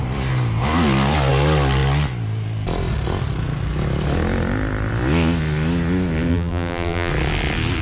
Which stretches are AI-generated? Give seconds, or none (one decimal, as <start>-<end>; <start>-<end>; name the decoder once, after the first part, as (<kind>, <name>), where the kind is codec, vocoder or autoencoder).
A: 6.3-7.1 (vocoder, BigVGAN v2)